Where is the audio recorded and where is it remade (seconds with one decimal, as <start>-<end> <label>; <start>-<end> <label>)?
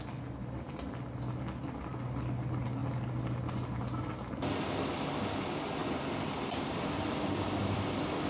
0.0-5.8 recorded; 5.8-7.0 remade; 7.0-8.3 recorded